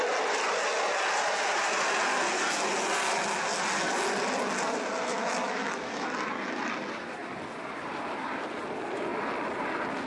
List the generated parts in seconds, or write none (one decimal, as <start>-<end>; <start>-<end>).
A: 5.1-6.1